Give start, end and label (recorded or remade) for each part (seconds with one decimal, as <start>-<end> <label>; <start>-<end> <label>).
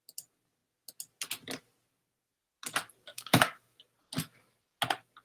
0.0-3.1 recorded; 3.1-3.8 remade; 3.8-5.2 recorded